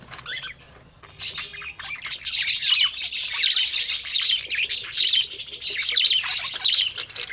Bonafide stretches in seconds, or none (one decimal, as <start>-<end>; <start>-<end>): 0.0-7.3